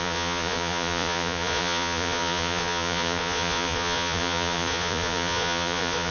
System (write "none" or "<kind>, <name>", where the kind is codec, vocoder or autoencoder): vocoder, Vocos